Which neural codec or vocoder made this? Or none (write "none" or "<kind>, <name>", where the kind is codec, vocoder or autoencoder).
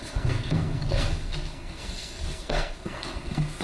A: codec, SNAC